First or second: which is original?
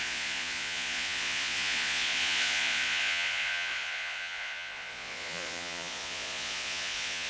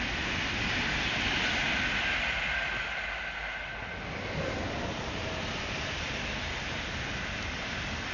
second